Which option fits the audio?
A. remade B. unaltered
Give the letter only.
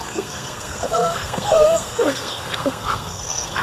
A